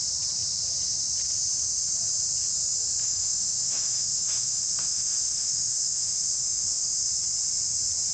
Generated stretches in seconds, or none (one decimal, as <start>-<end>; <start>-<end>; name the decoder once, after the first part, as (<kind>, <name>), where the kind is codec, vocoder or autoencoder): 3.0-7.1 (autoencoder, DAC-VAE)